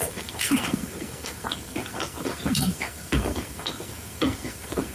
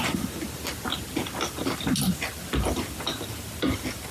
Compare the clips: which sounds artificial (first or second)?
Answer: first